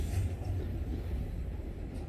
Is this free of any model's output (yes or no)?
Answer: yes